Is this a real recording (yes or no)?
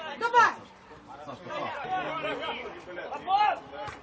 yes